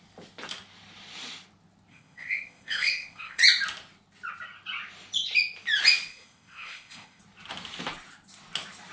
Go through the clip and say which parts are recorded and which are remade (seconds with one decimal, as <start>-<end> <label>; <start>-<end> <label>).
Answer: 0.0-1.9 recorded; 1.9-3.4 remade; 3.4-6.1 recorded; 6.1-7.2 remade; 7.2-8.9 recorded